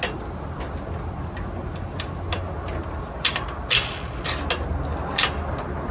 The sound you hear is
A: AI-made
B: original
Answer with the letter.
B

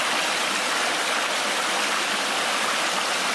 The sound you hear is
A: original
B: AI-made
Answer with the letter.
A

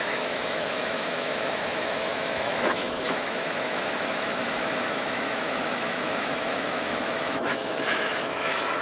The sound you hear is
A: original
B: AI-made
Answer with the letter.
B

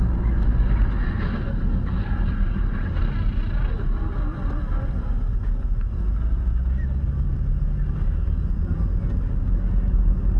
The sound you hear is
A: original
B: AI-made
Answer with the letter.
A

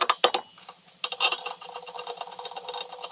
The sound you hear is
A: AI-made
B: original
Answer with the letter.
B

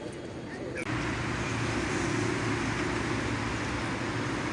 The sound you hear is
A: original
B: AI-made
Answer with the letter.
A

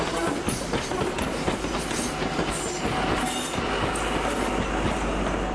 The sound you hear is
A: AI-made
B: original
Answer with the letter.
B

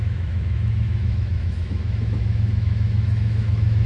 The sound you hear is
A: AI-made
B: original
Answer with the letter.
A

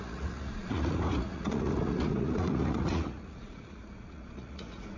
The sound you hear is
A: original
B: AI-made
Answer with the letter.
B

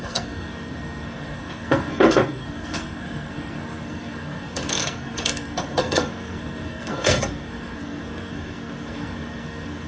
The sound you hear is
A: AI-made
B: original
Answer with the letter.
A